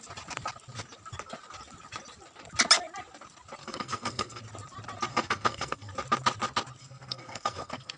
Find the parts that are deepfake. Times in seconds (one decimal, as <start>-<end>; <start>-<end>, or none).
3.6-4.4; 5.1-5.9; 6.8-8.0

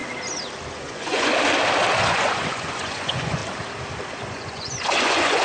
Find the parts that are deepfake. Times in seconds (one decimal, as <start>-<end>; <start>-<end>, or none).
0.7-1.3; 2.0-3.4; 4.3-5.4

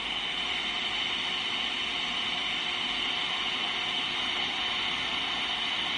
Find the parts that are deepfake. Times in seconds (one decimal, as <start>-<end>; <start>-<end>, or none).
none

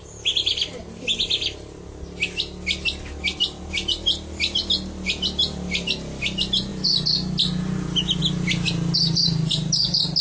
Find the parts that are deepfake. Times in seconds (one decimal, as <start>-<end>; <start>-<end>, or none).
none

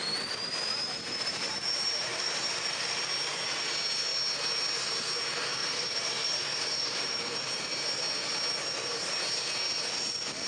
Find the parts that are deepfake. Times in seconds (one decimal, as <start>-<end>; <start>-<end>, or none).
0.0-3.0; 5.6-7.2

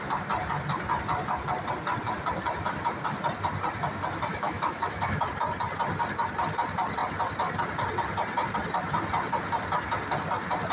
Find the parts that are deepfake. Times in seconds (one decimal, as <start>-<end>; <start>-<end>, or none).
4.3-5.2

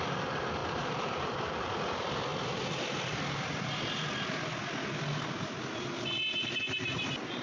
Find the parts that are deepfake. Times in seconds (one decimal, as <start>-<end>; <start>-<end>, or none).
none